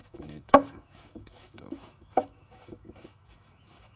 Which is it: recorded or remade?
remade